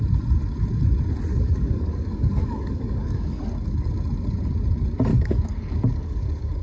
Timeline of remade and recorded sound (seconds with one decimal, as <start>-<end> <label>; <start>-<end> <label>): 0.0-1.3 recorded; 1.3-3.4 remade; 3.4-5.1 recorded; 5.1-6.6 remade